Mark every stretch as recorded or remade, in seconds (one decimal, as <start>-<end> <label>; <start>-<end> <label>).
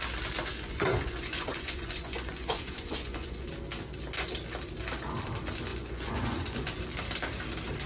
0.0-0.4 recorded; 0.4-3.5 remade; 3.5-5.7 recorded; 5.7-6.7 remade; 6.7-7.9 recorded